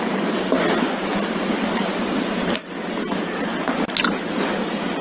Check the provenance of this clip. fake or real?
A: real